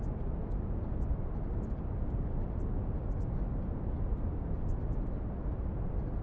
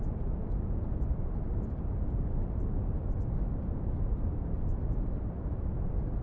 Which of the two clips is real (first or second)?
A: first